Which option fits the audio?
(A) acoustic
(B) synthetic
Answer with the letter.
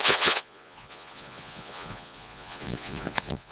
B